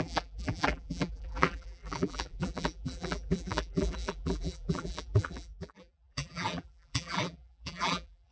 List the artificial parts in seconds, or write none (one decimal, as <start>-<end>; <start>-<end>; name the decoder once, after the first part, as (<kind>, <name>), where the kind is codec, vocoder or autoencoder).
0.0-8.3 (vocoder, BigVGAN v2)